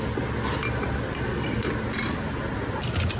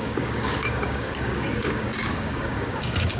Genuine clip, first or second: first